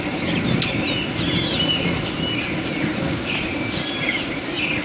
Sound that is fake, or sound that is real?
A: real